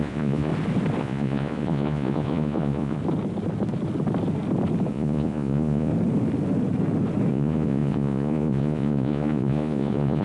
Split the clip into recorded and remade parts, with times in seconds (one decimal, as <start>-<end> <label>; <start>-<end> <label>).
0.0-0.5 remade; 0.5-1.0 recorded; 1.0-3.0 remade; 3.0-4.9 recorded; 4.9-5.9 remade; 5.9-7.3 recorded; 7.3-10.2 remade